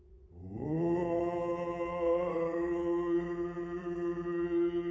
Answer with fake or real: fake